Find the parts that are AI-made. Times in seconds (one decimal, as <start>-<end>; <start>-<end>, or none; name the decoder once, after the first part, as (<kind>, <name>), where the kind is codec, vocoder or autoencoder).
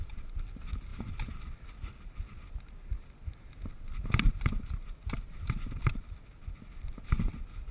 none